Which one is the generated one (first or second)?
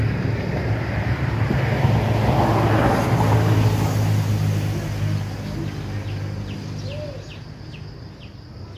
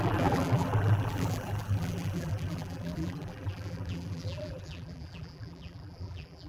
second